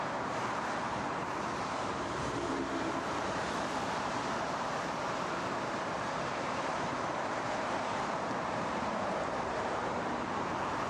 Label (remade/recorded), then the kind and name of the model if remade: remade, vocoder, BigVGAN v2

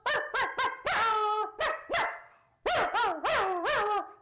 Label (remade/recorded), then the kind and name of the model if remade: remade, vocoder, BigVGAN v2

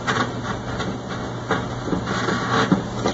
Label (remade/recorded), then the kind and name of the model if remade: remade, vocoder, BigVGAN v2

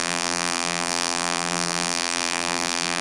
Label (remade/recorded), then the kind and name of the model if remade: remade, vocoder, BigVGAN v2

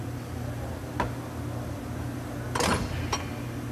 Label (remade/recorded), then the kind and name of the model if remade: remade, vocoder, BigVGAN v2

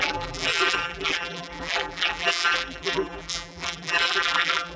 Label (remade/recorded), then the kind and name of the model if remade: remade, vocoder, BigVGAN v2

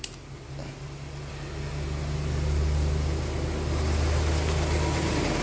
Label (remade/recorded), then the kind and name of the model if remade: recorded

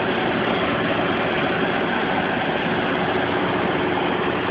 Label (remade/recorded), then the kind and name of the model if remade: recorded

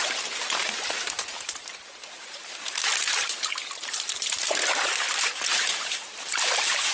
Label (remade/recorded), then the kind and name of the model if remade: remade, vocoder, BigVGAN v2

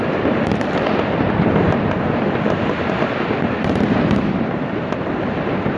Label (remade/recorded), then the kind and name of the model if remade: remade, vocoder, BigVGAN v2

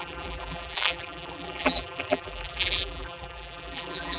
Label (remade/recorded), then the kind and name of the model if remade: remade, vocoder, BigVGAN v2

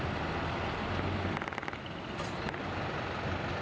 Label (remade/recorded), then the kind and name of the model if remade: recorded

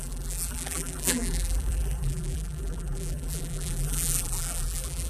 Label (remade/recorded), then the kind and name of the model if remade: remade, vocoder, BigVGAN v2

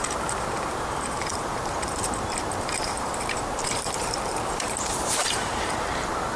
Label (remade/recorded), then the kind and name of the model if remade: remade, vocoder, BigVGAN v2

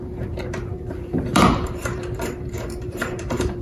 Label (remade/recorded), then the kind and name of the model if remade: remade, vocoder, BigVGAN v2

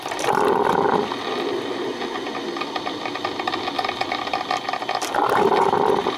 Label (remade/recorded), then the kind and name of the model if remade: recorded